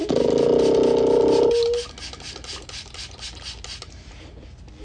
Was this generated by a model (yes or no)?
no